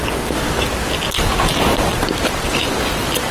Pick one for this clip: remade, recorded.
recorded